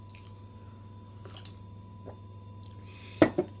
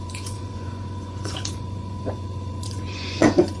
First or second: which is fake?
second